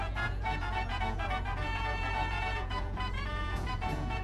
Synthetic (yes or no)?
yes